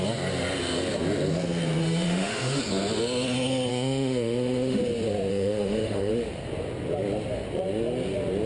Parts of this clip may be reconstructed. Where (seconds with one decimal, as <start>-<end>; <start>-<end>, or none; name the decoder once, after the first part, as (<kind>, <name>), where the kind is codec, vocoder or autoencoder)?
1.8-2.6 (autoencoder, DAC-VAE); 3.7-4.8; 5.3-6.1